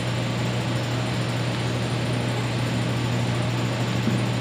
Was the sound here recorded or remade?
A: recorded